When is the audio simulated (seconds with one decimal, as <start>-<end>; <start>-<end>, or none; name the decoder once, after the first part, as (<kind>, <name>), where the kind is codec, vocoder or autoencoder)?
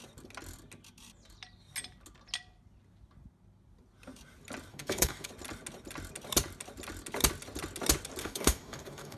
4.7-5.3 (codec, DAC); 8.2-9.2